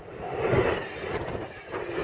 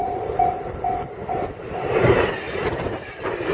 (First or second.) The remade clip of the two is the second